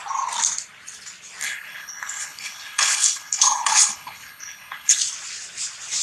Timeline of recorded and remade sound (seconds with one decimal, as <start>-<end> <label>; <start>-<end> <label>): 0.0-1.4 recorded; 1.4-5.0 remade; 5.0-6.0 recorded